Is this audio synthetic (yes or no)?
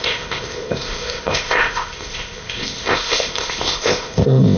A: yes